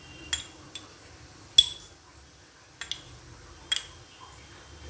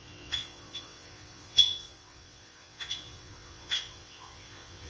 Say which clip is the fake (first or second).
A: second